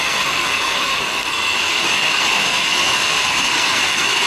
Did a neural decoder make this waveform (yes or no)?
yes